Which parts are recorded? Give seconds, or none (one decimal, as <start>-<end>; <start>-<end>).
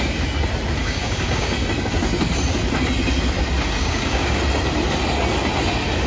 0.0-0.8; 1.5-3.8; 4.4-6.1